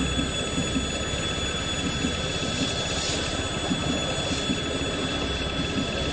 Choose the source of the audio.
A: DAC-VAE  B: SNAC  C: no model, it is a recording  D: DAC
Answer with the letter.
C